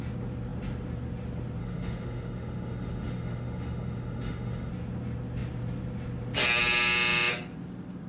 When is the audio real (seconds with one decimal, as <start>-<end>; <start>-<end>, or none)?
0.0-1.6; 4.7-8.1